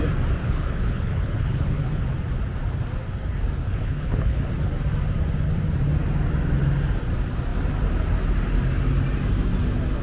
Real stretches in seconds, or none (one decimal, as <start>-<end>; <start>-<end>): 0.0-0.4; 2.0-3.6; 4.5-10.0